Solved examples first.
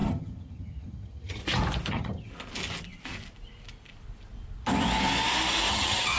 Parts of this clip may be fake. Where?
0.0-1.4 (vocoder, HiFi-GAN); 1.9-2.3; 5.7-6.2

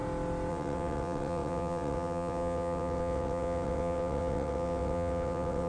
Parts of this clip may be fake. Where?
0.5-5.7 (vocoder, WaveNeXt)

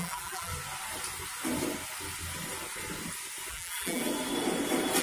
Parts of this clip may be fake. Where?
0.0-0.5 (vocoder, BigVGAN v2); 3.5-4.0

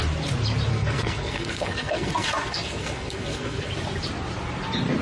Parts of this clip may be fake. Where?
0.7-3.7 (codec, SNAC)